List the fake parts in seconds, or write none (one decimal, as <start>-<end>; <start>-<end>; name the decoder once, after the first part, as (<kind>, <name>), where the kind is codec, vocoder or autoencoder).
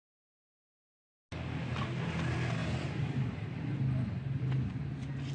2.6-3.7 (vocoder, BigVGAN v2)